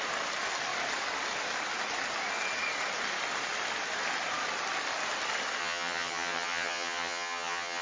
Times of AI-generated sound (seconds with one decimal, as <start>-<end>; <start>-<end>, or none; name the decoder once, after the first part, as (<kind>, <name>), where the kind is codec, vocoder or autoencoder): 5.6-7.8 (vocoder, HiFi-GAN)